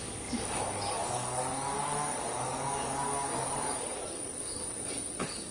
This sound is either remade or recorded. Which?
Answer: remade